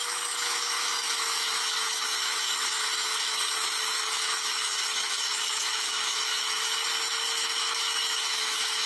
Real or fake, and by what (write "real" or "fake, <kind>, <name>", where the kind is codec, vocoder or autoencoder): fake, autoencoder, DAC-VAE